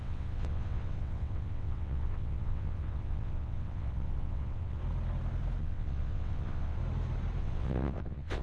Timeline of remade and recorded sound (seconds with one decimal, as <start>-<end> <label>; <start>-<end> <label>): 0.0-4.8 remade; 4.8-5.6 recorded; 5.6-6.8 remade; 6.8-7.4 recorded; 7.4-8.4 remade